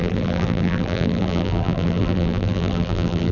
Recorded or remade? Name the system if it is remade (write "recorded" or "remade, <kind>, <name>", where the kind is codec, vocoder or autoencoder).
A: remade, vocoder, BigVGAN v2